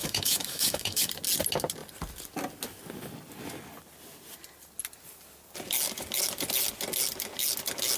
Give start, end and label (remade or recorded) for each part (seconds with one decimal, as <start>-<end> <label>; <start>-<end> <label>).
0.0-1.1 remade; 1.1-8.0 recorded